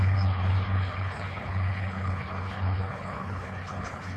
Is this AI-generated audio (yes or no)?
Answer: yes